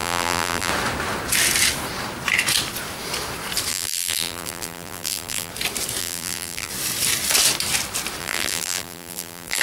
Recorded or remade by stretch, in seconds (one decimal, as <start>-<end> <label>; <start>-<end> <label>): 0.0-0.7 remade; 0.7-3.7 recorded; 3.7-5.5 remade; 5.5-6.0 recorded; 6.0-6.7 remade; 6.7-8.2 recorded; 8.2-9.6 remade